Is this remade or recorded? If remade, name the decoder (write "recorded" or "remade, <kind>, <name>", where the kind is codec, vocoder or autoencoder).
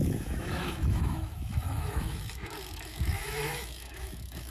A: remade, autoencoder, DAC-VAE